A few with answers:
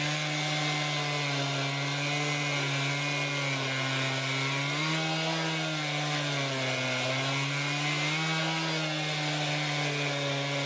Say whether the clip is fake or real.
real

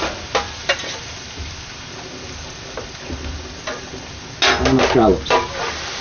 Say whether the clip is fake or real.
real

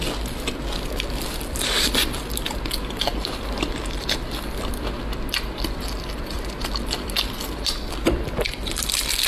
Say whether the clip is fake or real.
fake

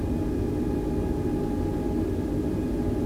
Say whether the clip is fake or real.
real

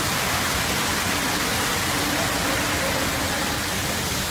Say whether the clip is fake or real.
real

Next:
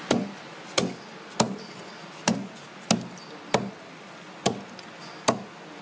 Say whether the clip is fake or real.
real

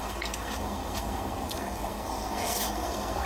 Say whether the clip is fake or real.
fake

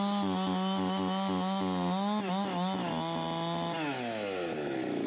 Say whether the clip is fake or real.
real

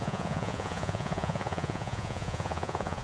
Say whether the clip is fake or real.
fake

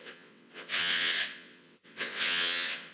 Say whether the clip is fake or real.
fake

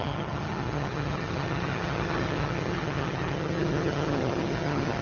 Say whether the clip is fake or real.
fake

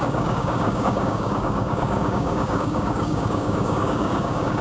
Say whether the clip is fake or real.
fake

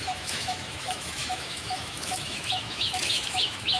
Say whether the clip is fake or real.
fake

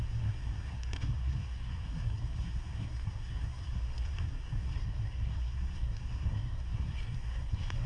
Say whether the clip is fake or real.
fake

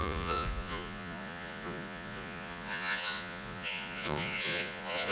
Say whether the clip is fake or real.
fake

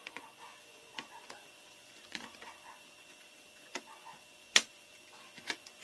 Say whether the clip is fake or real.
fake